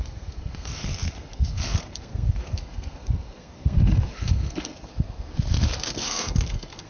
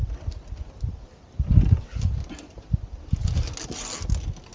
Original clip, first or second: second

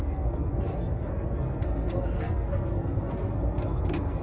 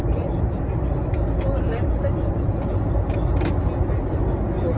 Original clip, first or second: second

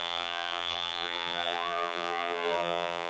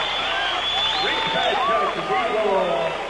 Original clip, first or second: second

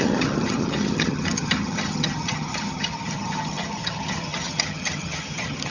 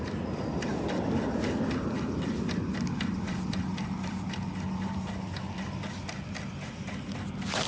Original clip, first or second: second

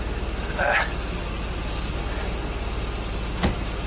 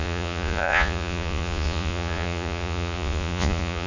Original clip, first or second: first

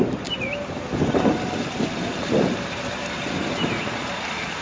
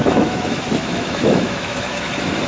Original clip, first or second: first